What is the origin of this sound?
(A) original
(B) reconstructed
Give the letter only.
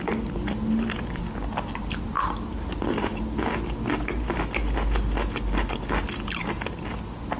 A